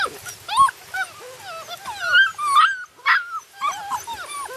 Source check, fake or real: real